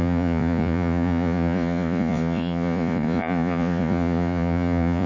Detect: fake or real fake